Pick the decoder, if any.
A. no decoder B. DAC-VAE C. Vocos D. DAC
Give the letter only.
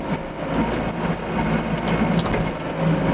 A